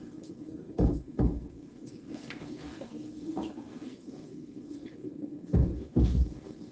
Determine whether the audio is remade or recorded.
remade